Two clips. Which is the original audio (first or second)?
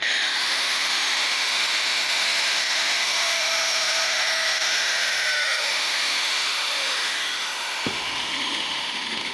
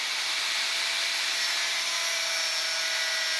second